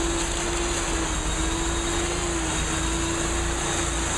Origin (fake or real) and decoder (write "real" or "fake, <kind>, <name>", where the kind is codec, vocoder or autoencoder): real